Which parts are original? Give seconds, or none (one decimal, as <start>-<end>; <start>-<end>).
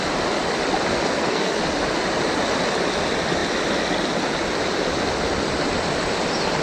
0.0-0.9; 1.6-6.6